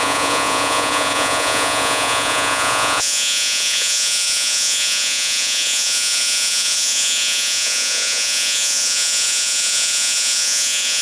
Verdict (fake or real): fake